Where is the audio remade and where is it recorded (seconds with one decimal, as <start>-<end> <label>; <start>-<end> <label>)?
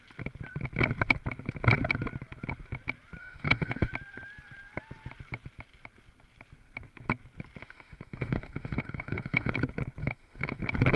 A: 0.0-3.2 recorded; 3.2-3.9 remade; 3.9-7.6 recorded; 7.6-9.5 remade; 9.5-10.0 recorded; 10.0-10.6 remade; 10.6-11.0 recorded